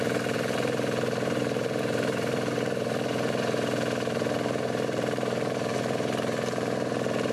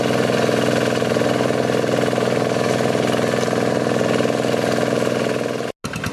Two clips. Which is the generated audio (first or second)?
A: first